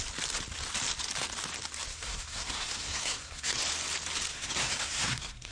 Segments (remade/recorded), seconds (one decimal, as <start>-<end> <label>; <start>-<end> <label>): 0.0-1.9 recorded; 1.9-3.6 remade; 3.6-4.3 recorded; 4.3-5.5 remade